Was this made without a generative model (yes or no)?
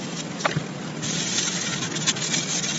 yes